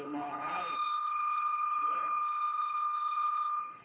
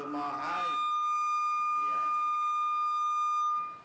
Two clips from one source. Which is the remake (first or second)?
first